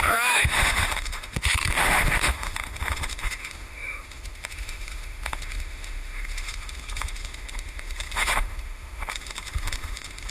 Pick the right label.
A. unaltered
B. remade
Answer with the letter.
B